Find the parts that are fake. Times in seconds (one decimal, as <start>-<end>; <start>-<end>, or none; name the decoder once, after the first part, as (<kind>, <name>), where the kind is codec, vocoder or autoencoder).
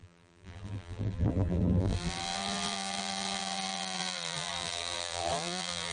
0.0-5.9 (vocoder, BigVGAN v2)